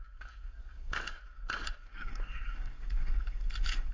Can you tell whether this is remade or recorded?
remade